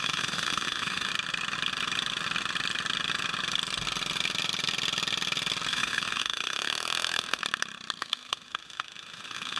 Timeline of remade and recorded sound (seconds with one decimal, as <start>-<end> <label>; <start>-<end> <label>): 0.0-1.1 remade; 1.1-5.7 recorded; 5.7-7.4 remade; 7.4-8.0 recorded; 8.0-9.6 remade